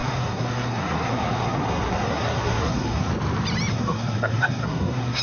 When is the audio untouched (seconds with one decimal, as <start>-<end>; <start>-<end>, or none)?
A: 3.1-3.7